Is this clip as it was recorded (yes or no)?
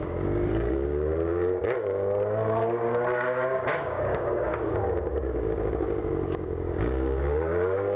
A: no